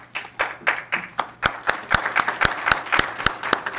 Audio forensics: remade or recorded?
recorded